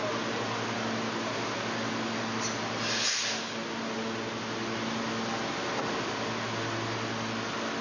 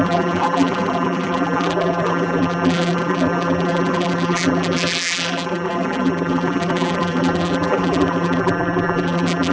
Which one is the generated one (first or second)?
second